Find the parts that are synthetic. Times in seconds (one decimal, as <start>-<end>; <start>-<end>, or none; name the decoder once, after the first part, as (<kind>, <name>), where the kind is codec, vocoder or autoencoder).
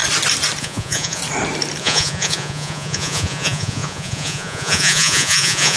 0.6-1.2 (vocoder, Vocos); 1.8-5.8